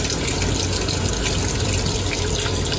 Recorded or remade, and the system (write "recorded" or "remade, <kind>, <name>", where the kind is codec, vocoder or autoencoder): recorded